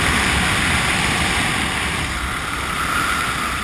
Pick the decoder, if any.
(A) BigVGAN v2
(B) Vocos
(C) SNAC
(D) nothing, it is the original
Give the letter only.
D